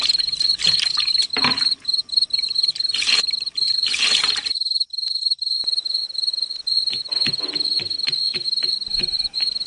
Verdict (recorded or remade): remade